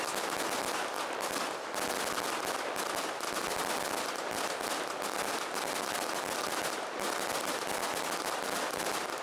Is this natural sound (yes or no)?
yes